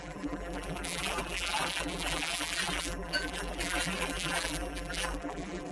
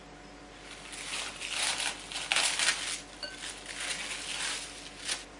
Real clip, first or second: second